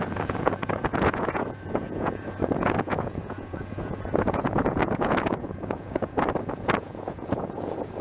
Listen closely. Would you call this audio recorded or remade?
remade